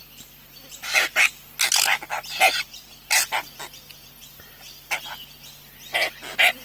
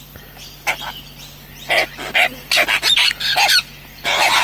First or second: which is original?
first